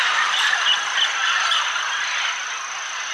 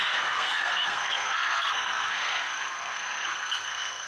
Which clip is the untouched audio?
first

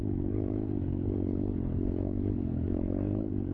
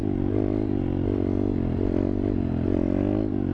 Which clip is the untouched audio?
second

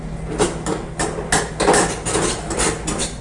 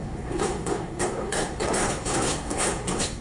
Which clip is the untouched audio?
first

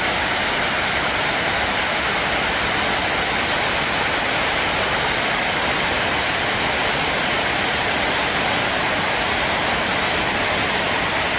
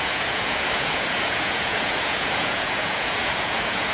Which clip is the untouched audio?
first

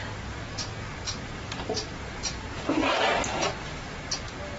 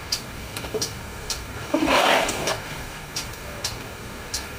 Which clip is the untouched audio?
first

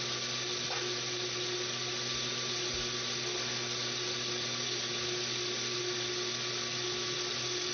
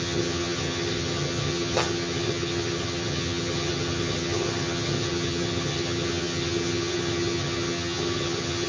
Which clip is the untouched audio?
first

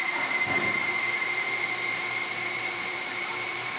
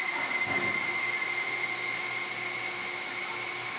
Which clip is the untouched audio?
second